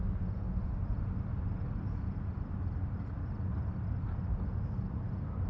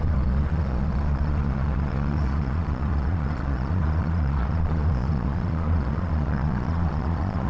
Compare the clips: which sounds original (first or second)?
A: first